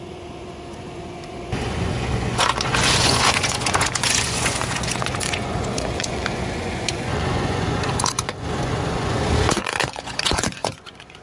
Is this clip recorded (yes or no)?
no